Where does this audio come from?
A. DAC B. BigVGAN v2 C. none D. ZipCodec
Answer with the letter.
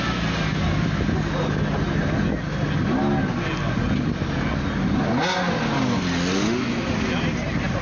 C